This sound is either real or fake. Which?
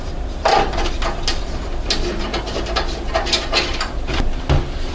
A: real